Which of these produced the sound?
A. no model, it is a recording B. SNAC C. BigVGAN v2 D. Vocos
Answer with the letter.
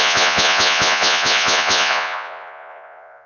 D